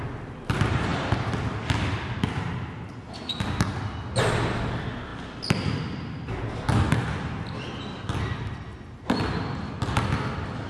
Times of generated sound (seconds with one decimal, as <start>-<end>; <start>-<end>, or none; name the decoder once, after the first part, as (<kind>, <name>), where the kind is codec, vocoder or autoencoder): none